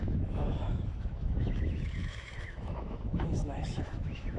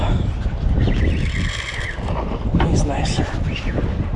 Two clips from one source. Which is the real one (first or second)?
second